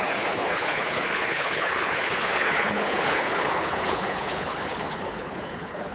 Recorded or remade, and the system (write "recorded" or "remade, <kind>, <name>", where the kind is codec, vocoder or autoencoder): remade, codec, HILCodec